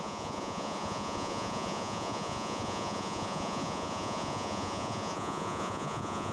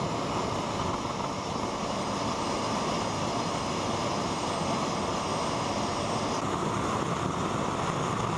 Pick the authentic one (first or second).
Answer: second